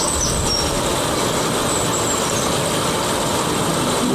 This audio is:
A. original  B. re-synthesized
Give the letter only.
A